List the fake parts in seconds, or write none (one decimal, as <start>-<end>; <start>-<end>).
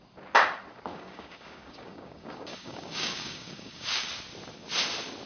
0.9-4.1